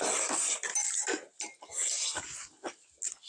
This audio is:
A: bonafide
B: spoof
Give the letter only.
A